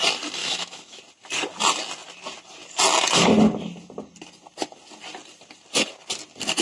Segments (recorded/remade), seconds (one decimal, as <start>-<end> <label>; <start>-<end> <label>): 0.0-0.4 recorded; 0.4-1.0 remade; 1.0-6.6 recorded